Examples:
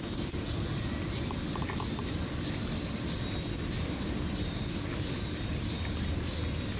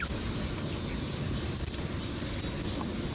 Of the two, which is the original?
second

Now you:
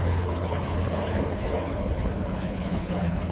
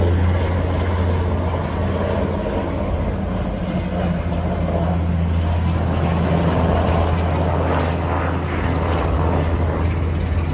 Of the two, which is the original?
second